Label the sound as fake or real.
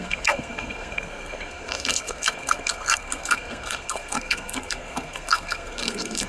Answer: fake